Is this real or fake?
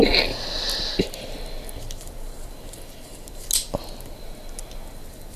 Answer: real